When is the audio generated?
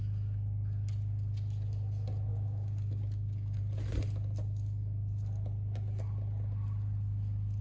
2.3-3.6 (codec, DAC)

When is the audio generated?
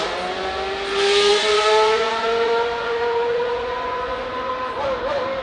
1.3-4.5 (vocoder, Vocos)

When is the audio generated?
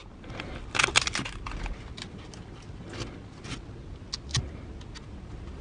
none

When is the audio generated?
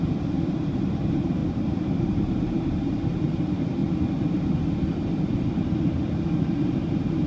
0.0-3.8 (vocoder, BigVGAN v2); 6.4-7.3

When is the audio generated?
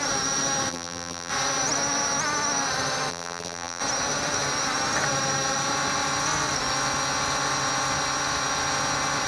0.7-1.3 (vocoder, BigVGAN v2); 3.1-3.8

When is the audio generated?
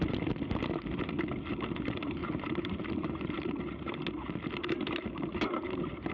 2.2-4.0 (vocoder, BigVGAN v2)